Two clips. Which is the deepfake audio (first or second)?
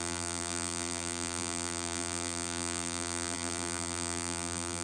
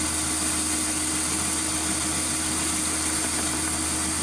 first